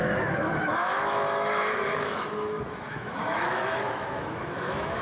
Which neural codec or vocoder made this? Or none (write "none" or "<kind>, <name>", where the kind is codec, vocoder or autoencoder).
autoencoder, DAC-VAE